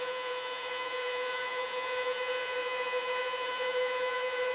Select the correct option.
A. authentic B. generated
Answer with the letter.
B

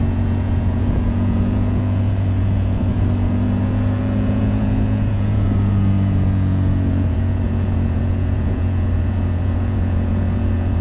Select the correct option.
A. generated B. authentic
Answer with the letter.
A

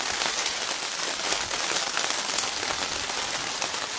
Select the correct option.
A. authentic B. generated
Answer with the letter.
A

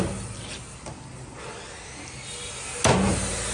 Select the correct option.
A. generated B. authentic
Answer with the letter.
B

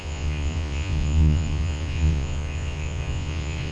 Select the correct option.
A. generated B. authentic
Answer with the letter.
A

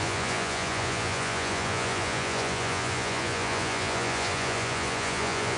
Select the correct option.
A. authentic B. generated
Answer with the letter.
B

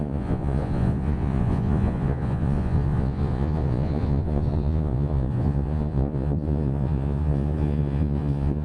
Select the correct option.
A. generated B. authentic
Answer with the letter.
A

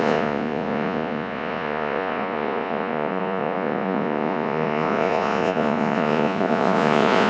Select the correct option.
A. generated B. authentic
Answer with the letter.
A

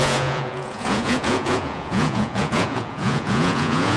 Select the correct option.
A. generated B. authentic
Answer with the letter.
A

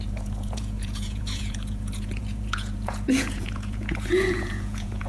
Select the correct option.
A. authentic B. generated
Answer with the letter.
B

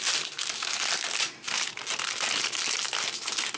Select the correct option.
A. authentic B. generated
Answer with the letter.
A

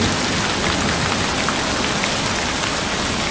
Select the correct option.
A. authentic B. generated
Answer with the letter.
A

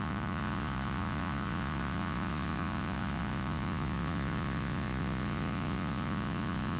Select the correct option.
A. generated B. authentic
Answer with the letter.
A